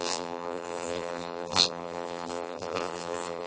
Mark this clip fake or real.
fake